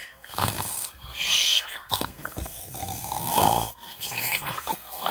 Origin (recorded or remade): remade